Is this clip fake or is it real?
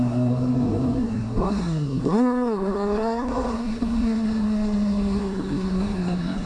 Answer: fake